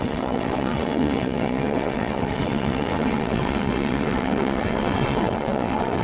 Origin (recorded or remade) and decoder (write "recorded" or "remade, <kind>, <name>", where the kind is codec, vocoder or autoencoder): remade, vocoder, WaveNeXt